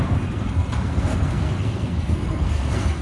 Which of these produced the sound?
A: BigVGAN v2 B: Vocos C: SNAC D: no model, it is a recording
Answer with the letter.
C